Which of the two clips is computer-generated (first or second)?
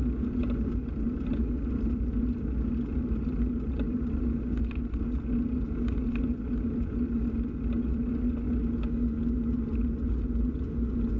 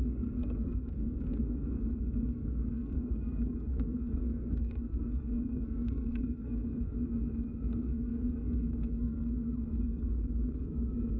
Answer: second